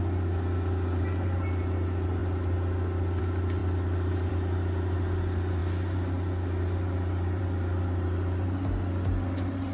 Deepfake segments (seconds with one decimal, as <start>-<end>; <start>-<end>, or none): none